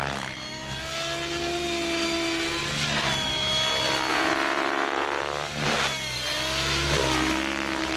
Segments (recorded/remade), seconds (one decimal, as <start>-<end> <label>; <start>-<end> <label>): 0.0-4.1 recorded; 4.1-5.2 remade; 5.2-8.0 recorded